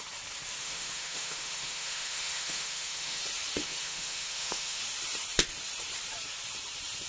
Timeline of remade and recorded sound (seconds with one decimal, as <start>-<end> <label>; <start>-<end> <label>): 0.0-0.6 recorded; 0.6-3.2 remade; 3.2-3.6 recorded; 3.6-4.8 remade; 4.8-7.1 recorded